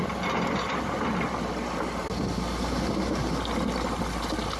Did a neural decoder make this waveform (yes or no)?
no